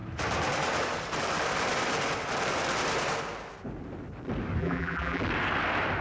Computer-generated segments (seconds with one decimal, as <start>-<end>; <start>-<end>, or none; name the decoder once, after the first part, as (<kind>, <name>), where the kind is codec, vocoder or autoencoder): 4.6-5.2 (vocoder, BigVGAN v2)